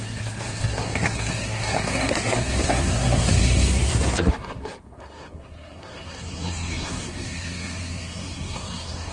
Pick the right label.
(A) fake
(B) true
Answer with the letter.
A